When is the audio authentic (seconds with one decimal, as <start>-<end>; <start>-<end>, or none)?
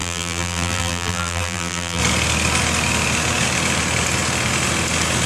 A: 2.0-5.3